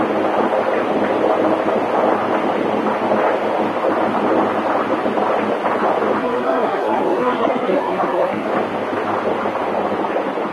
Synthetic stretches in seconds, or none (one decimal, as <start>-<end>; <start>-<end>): 6.2-8.5